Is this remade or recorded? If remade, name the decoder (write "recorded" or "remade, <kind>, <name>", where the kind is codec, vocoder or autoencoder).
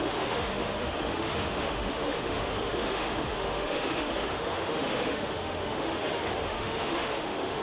remade, autoencoder, DAC-VAE